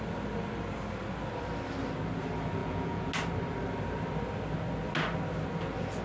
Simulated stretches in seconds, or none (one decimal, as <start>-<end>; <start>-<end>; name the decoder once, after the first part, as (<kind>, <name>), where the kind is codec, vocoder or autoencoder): 2.6-3.1 (vocoder, Vocos)

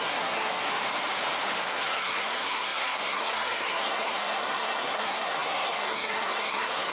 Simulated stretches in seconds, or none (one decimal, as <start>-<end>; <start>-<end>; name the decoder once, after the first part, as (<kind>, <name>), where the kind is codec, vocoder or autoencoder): 0.0-0.6 (codec, SNAC); 1.6-6.9

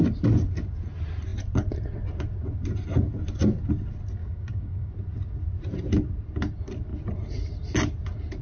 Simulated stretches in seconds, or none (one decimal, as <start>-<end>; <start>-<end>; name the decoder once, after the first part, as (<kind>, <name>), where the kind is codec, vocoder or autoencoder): 4.2-4.9 (codec, DAC)

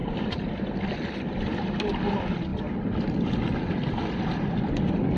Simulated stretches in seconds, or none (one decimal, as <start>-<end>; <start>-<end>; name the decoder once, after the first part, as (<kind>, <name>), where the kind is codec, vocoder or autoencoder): none

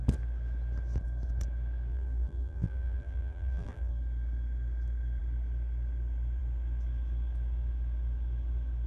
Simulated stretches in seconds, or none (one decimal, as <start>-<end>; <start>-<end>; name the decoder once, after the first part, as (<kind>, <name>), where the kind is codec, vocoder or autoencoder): 1.9-3.9 (vocoder, BigVGAN v2)

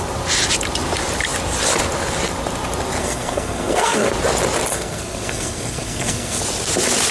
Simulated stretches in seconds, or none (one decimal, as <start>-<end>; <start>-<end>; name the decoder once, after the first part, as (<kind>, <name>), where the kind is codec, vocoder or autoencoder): 3.0-4.1 (codec, SNAC); 4.7-6.4

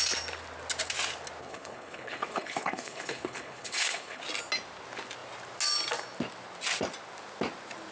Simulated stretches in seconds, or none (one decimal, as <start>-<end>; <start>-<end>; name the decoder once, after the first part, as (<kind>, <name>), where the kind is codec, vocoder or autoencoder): 1.4-4.2 (codec, HILCodec)